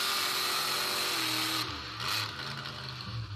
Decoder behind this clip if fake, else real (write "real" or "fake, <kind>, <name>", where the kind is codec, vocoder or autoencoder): real